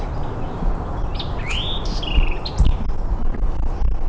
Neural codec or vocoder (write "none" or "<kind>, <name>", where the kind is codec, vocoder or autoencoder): none